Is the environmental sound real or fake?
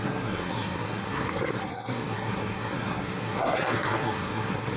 fake